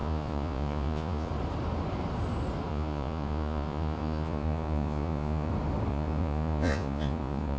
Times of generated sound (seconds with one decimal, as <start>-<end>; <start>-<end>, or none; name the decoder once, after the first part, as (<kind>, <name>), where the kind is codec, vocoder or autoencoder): 0.0-1.3 (vocoder, Vocos); 2.7-5.5; 5.9-7.6